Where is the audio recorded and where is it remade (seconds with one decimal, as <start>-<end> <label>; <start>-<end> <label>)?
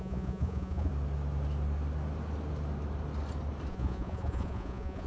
0.0-0.9 remade; 0.9-3.7 recorded; 3.7-5.1 remade